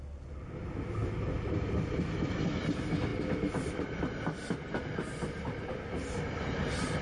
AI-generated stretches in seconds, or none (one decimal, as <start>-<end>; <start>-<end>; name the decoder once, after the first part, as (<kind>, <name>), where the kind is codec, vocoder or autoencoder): none